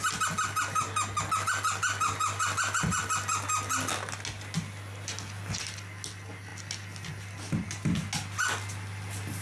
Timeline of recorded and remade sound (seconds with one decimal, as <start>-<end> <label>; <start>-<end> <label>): 0.0-9.4 recorded